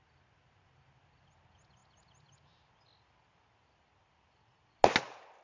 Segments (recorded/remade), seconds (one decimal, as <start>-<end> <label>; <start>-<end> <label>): 0.0-5.4 recorded